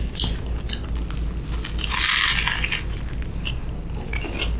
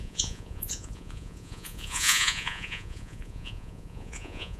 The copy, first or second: second